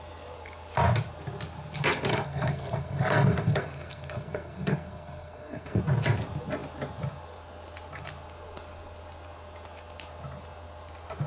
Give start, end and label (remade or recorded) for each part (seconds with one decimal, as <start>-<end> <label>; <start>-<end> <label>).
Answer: 0.0-2.1 recorded; 2.1-5.8 remade; 5.8-11.3 recorded